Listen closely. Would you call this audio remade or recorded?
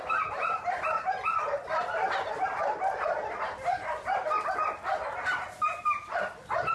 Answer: remade